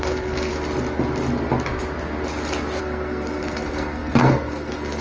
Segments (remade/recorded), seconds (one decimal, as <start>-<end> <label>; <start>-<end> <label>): 0.0-0.5 remade; 0.5-2.8 recorded; 2.8-5.0 remade